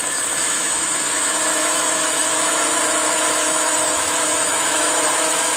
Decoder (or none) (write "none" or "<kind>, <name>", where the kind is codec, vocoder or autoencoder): autoencoder, DAC-VAE